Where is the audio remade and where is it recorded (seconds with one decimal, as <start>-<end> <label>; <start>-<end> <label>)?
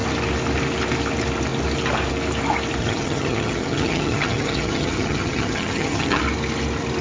0.0-2.8 recorded; 2.8-6.2 remade; 6.2-7.0 recorded